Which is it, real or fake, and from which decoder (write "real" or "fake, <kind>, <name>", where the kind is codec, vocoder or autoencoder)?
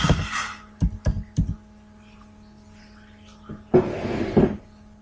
real